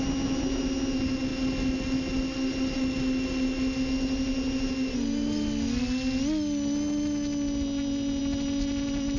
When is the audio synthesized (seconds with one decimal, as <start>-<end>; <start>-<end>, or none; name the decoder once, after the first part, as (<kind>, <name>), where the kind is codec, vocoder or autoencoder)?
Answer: none